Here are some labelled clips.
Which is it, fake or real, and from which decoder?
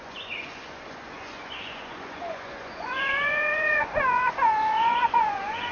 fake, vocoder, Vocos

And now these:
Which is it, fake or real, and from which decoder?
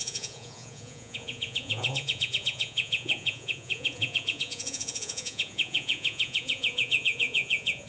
fake, vocoder, Vocos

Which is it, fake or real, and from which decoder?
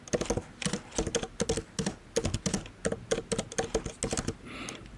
real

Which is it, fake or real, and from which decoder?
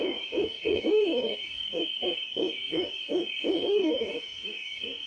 fake, codec, DAC